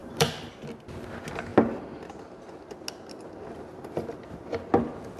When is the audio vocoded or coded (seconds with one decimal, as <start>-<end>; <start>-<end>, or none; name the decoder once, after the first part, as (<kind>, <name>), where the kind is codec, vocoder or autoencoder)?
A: 0.0-0.6 (vocoder, BigVGAN v2); 3.7-4.7